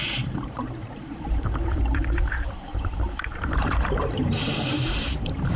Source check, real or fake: fake